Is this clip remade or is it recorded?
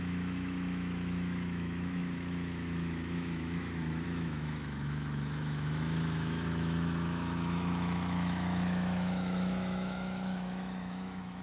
remade